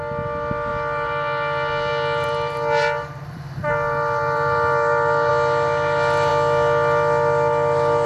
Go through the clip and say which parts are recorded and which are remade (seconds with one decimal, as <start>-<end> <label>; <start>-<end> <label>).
0.0-0.7 recorded; 0.7-5.3 remade; 5.3-8.1 recorded